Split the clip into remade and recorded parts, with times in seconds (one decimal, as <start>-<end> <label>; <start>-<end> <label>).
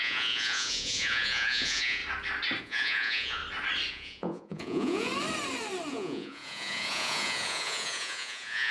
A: 0.0-2.0 remade; 2.0-2.6 recorded; 2.6-3.4 remade; 3.4-3.9 recorded; 3.9-5.1 remade; 5.1-5.9 recorded; 5.9-8.7 remade